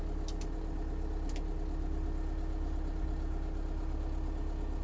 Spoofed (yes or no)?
no